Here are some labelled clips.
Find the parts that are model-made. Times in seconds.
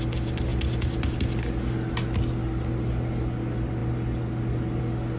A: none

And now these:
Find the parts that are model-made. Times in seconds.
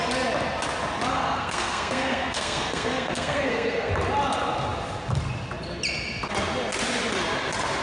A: 1.1-3.9 (codec, SNAC)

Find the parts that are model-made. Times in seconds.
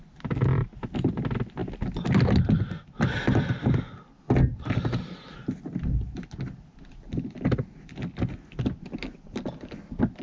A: none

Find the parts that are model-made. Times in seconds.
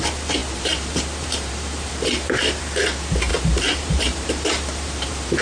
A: 0.0-5.4 (vocoder, BigVGAN v2)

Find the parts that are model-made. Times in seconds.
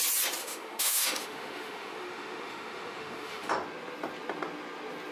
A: 0.4-3.5 (autoencoder, DAC-VAE)